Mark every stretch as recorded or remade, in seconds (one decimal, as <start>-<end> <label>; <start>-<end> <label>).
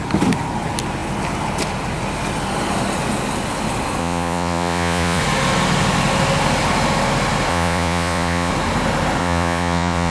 0.0-4.0 recorded; 4.0-5.2 remade; 5.2-7.5 recorded; 7.5-8.5 remade; 8.5-9.2 recorded; 9.2-10.1 remade